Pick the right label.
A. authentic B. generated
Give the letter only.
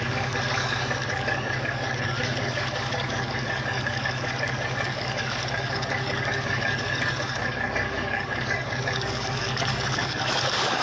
B